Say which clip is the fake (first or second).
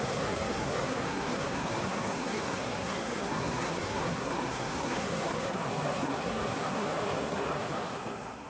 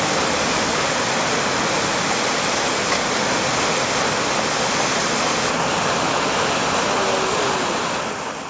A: first